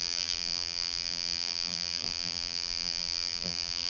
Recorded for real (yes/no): no